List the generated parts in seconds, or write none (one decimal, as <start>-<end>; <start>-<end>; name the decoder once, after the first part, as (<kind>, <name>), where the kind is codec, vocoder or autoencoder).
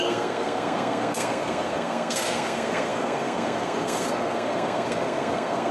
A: 0.0-5.7 (codec, SNAC)